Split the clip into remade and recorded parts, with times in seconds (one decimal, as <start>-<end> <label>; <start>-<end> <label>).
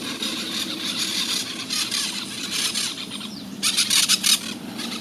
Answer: 0.0-1.1 recorded; 1.1-4.1 remade; 4.1-5.0 recorded